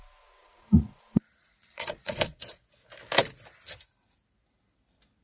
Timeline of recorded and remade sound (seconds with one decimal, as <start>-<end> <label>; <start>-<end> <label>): 0.0-0.4 recorded; 0.4-2.6 remade; 2.6-5.2 recorded